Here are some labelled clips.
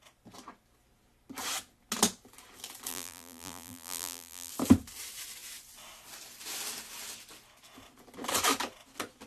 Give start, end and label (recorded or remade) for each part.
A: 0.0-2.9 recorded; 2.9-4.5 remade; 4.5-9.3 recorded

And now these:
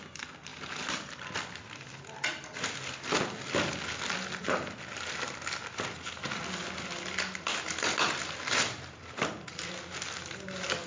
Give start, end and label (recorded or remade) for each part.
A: 0.0-10.9 recorded

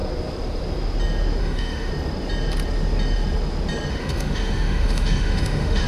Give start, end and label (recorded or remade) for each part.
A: 0.0-1.4 recorded; 1.4-1.9 remade; 1.9-3.9 recorded; 3.9-5.9 remade

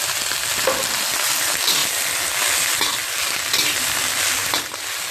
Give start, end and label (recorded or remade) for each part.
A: 0.0-5.1 recorded

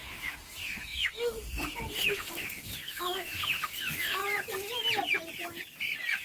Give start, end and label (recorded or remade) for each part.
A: 0.0-4.2 remade; 4.2-6.2 recorded